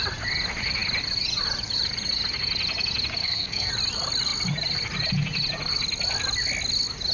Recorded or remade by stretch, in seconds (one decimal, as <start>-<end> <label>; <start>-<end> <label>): 0.0-3.2 recorded; 3.2-3.7 remade; 3.7-7.1 recorded